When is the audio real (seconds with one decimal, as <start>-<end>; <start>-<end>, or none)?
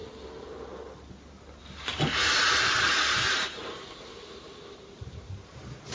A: 0.0-1.6; 2.4-3.3